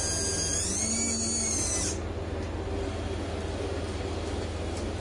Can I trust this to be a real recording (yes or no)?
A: yes